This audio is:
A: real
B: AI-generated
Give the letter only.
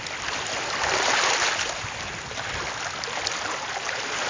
A